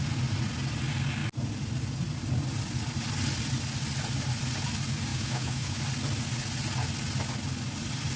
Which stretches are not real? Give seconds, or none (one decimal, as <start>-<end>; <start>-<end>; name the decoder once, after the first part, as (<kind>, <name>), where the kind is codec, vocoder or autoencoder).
5.1-5.8 (autoencoder, DAC-VAE)

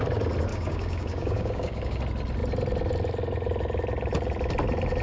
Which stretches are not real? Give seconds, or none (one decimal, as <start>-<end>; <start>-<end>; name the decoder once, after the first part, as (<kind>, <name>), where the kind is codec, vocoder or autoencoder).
0.5-2.0 (codec, DAC)

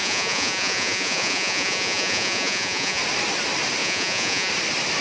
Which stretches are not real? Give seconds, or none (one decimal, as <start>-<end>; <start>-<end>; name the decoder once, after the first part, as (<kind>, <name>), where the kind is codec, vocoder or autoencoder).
0.0-3.0 (vocoder, Vocos); 3.8-4.5

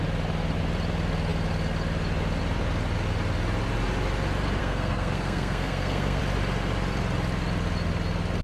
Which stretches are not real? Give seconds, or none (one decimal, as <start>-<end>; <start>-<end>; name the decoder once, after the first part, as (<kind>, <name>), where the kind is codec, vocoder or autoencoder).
4.6-6.2 (codec, SNAC)

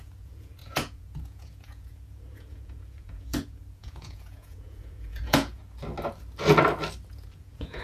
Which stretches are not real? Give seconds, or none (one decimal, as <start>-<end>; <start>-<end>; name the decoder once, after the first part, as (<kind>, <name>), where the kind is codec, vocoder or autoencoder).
0.0-5.6 (vocoder, Vocos); 7.1-7.8